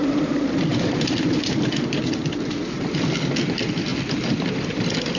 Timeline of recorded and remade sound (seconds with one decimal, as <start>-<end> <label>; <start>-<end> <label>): 0.0-3.9 recorded; 3.9-4.5 remade; 4.5-5.2 recorded